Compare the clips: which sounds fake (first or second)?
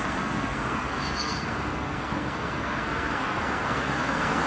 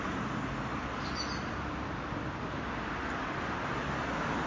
first